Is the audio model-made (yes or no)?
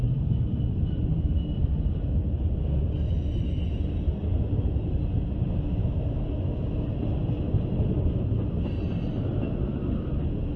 no